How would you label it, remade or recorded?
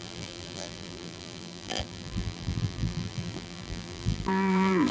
remade